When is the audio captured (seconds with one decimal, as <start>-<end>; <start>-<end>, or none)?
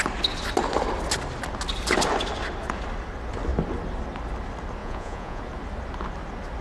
0.0-4.8; 5.4-6.6